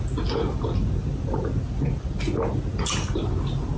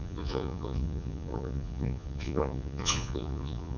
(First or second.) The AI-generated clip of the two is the second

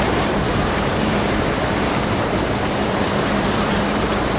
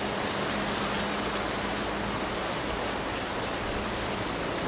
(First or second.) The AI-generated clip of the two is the first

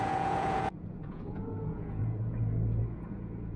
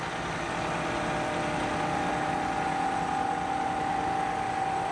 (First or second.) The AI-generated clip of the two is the first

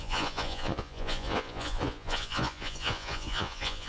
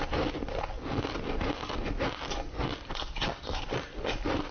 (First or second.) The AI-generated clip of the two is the first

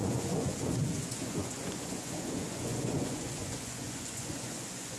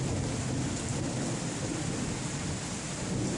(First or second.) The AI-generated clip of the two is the first